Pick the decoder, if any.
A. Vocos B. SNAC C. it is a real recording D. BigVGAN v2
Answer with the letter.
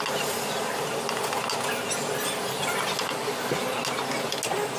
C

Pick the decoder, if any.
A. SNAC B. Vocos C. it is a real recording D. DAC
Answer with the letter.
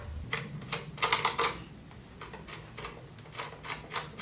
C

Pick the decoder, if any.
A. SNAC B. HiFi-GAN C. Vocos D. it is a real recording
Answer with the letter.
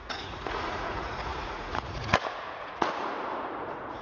C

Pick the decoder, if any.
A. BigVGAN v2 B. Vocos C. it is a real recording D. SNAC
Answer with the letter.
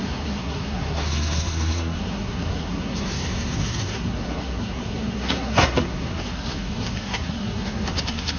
D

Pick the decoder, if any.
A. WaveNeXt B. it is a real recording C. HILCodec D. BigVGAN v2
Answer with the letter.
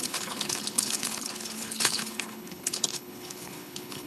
C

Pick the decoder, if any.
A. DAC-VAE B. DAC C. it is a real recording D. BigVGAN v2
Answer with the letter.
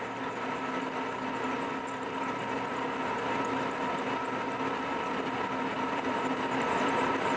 C